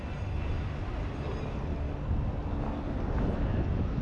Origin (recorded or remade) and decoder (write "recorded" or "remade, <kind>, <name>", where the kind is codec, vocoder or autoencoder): recorded